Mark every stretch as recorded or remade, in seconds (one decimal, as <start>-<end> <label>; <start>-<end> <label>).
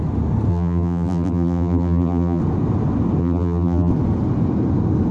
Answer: 0.0-0.5 recorded; 0.5-2.4 remade; 2.4-3.2 recorded; 3.2-3.9 remade; 3.9-5.1 recorded